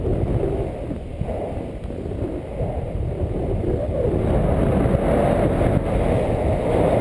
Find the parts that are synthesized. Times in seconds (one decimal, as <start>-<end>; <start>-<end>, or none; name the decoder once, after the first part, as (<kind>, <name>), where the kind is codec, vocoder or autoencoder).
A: none

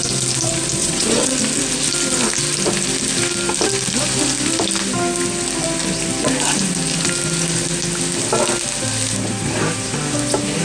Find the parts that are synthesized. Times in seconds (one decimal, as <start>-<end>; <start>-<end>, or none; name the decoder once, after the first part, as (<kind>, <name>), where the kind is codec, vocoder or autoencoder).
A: 0.8-1.3 (vocoder, WaveNeXt)

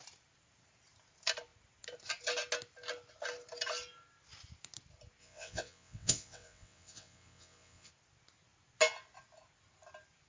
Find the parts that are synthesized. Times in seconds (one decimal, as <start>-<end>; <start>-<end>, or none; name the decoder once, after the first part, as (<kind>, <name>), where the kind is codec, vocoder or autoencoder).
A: 5.2-7.9 (vocoder, WaveNeXt)

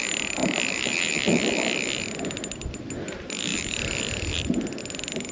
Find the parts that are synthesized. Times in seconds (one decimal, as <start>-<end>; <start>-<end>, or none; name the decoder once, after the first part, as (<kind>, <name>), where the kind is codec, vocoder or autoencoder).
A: none

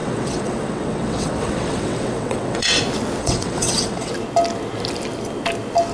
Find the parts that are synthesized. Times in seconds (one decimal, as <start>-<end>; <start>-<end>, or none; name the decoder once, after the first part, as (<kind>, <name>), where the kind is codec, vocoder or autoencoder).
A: 0.0-2.8 (vocoder, WaveNeXt); 3.2-4.1